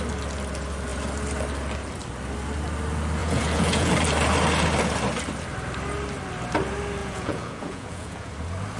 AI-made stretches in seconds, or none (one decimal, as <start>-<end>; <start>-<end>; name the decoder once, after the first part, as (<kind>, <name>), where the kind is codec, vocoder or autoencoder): 3.2-3.9 (vocoder, Vocos); 7.0-8.3